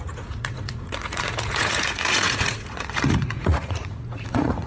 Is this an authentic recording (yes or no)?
no